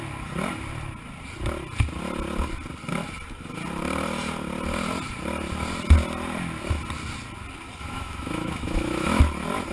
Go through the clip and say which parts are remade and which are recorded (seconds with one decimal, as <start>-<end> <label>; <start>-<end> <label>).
0.0-7.8 recorded; 7.8-9.2 remade; 9.2-9.7 recorded